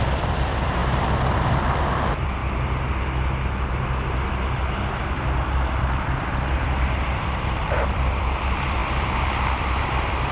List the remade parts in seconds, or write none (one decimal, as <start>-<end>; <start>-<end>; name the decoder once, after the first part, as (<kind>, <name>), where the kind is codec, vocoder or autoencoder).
0.0-0.8 (vocoder, BigVGAN v2); 1.3-2.4; 4.9-10.3